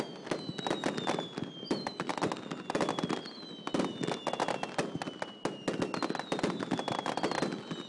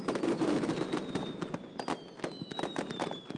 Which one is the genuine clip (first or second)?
first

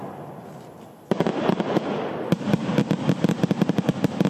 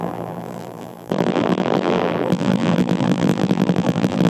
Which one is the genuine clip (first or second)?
first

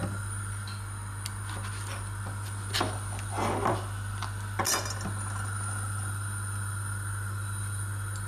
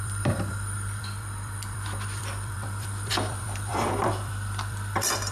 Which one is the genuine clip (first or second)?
first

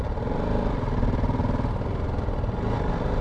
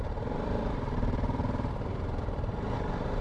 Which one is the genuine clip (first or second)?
first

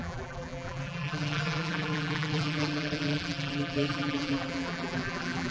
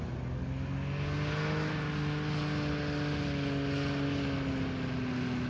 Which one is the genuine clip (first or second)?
second